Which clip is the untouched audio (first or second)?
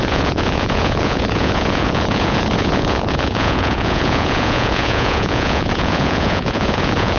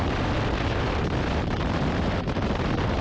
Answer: second